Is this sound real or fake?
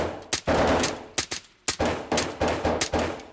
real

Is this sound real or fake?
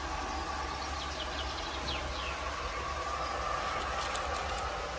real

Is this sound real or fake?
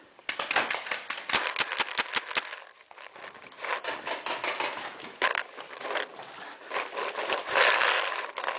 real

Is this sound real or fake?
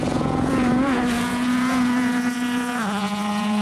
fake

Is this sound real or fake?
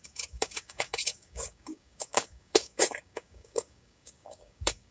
fake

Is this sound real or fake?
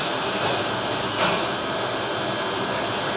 real